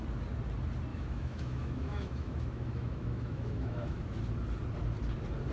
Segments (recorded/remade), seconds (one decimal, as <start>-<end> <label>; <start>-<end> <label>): 0.0-0.9 recorded; 0.9-4.2 remade; 4.2-5.5 recorded